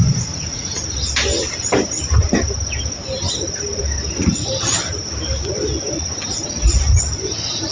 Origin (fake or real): real